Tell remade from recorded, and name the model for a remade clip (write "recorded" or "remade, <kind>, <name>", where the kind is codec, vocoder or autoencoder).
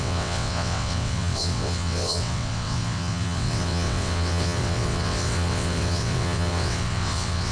remade, vocoder, WaveNeXt